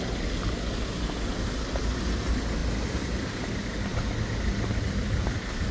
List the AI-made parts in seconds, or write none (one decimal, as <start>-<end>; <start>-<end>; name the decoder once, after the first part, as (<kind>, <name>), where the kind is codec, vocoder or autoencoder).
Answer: none